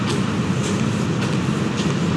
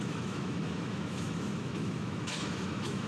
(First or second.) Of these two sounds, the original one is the first